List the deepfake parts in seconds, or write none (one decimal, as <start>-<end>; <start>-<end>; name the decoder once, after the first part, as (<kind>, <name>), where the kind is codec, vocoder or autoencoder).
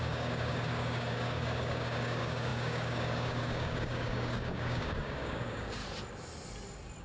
0.0-5.8 (codec, DAC)